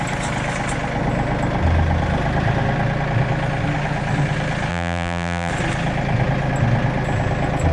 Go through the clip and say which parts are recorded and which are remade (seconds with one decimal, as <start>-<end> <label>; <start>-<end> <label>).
0.0-4.7 recorded; 4.7-5.5 remade; 5.5-7.7 recorded